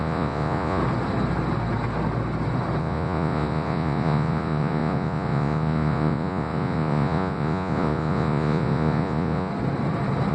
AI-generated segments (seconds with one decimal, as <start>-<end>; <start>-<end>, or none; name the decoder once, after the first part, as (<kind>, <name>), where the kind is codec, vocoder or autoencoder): 0.0-0.8 (vocoder, Vocos); 2.8-9.5